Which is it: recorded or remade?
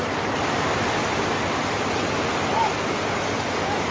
recorded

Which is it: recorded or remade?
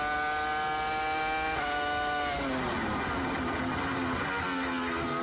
recorded